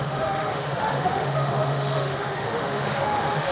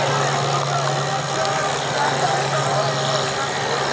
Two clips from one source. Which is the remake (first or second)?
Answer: first